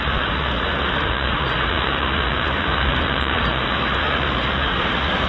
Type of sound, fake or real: fake